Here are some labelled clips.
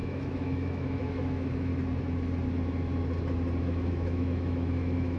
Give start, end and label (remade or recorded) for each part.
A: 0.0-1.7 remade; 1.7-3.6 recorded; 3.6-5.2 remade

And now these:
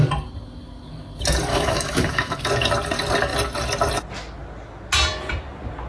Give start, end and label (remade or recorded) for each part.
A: 0.0-1.5 recorded; 1.5-2.5 remade; 2.5-5.9 recorded